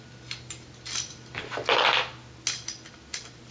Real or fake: real